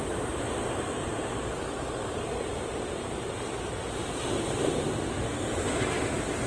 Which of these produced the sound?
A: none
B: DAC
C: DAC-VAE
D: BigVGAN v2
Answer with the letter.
D